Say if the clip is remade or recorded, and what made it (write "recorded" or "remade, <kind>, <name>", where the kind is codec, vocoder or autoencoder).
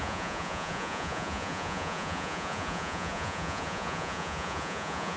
remade, vocoder, Vocos